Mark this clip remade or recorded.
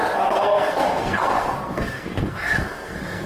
remade